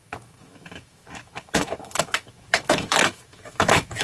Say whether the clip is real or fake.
fake